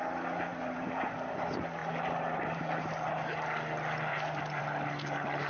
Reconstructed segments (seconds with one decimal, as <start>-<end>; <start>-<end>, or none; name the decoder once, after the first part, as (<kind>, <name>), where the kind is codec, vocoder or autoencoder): 0.5-1.1 (vocoder, BigVGAN v2); 1.8-2.6; 4.1-4.6